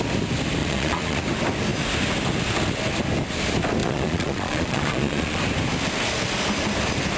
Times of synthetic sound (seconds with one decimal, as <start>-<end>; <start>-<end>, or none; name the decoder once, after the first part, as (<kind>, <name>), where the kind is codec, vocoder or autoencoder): 0.6-1.2 (vocoder, Vocos); 3.8-5.4